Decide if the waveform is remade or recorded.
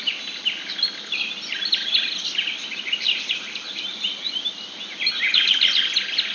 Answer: recorded